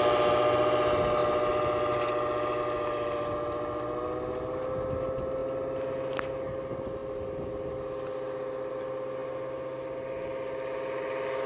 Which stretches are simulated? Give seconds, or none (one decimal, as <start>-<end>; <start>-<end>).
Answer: 1.2-2.6